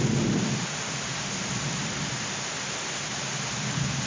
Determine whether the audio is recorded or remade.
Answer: recorded